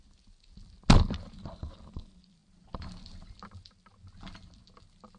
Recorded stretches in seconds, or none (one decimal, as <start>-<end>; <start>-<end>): 0.0-5.2